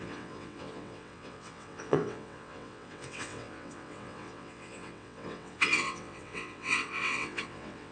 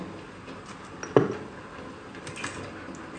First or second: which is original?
second